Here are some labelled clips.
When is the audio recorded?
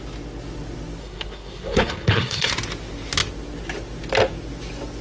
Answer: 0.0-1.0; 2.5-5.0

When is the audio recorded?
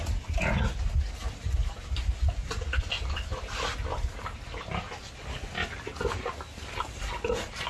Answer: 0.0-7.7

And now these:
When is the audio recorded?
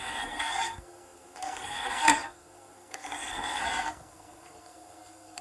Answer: none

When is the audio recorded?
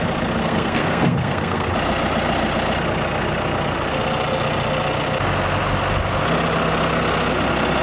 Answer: 0.0-0.4; 1.7-7.8